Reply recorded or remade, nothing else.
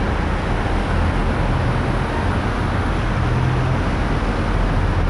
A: recorded